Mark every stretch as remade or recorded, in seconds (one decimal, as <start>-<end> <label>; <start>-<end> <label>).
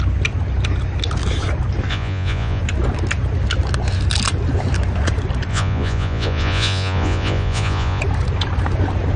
0.0-1.9 recorded; 1.9-2.6 remade; 2.6-5.5 recorded; 5.5-8.0 remade; 8.0-9.2 recorded